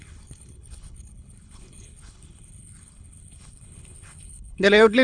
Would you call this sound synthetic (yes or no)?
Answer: yes